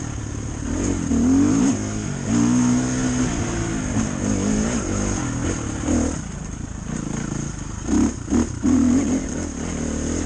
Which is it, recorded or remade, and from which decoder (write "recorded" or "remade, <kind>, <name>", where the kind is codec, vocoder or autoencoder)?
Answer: recorded